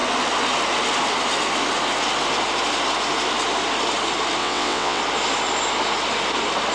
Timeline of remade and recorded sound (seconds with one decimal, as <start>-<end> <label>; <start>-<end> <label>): 0.0-4.4 recorded; 4.4-5.0 remade; 5.0-6.7 recorded